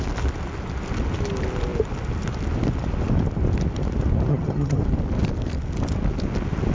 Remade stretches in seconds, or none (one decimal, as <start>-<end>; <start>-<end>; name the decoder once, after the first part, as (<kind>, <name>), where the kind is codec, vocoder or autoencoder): 4.3-4.8 (vocoder, HiFi-GAN)